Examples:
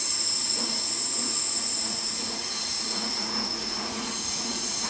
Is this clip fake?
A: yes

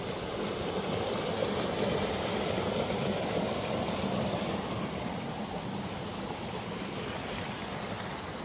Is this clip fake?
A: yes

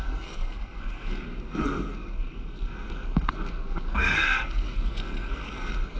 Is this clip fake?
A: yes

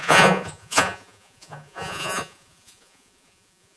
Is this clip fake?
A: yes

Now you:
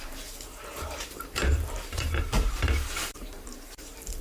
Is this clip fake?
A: yes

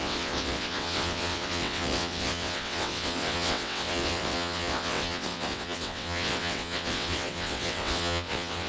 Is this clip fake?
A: yes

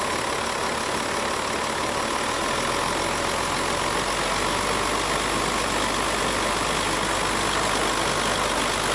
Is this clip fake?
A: no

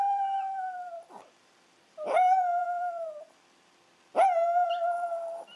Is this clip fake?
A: yes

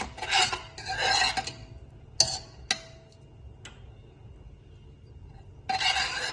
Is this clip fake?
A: no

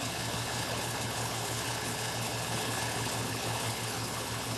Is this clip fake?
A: yes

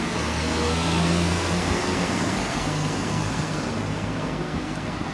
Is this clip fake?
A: yes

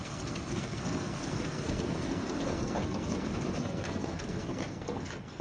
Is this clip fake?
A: yes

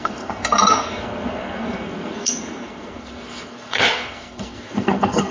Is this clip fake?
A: yes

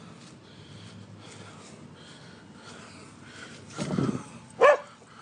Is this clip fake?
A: no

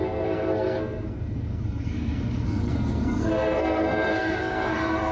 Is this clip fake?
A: yes